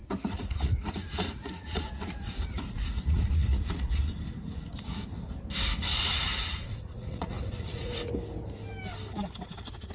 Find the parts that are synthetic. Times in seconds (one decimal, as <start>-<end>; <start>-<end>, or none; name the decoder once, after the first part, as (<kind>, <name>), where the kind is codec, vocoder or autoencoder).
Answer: 0.0-4.1 (vocoder, Vocos); 5.9-8.1